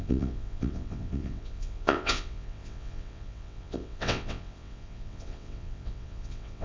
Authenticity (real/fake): fake